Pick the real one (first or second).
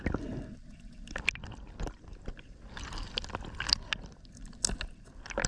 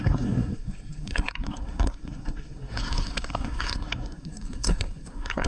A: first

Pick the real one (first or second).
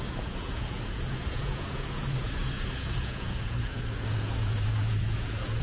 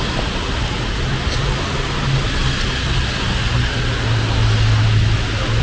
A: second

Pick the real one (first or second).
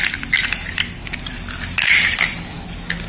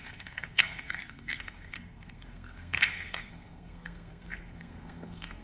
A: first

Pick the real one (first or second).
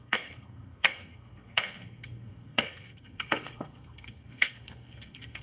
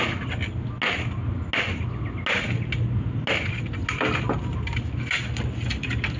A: second